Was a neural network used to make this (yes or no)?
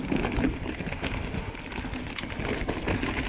no